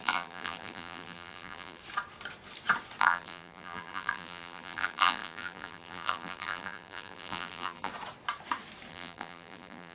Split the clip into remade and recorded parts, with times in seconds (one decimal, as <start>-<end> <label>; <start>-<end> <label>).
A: 0.0-1.8 remade; 1.8-3.0 recorded; 3.0-7.9 remade; 7.9-8.9 recorded; 8.9-9.9 remade